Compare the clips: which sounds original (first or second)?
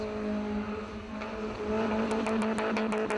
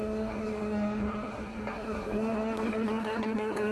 first